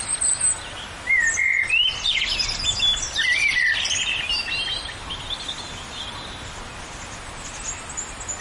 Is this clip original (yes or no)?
yes